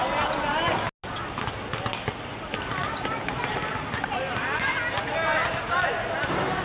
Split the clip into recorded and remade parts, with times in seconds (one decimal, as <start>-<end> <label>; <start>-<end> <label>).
0.0-6.6 recorded